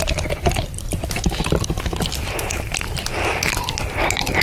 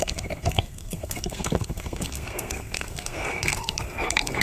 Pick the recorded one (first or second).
first